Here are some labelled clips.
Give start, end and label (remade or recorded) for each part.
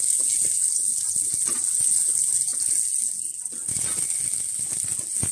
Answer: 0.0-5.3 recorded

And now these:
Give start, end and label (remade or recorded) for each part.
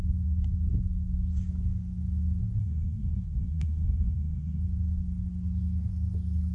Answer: 0.0-2.6 recorded; 2.6-4.6 remade; 4.6-6.5 recorded